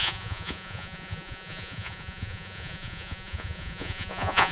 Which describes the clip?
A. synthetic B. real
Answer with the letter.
A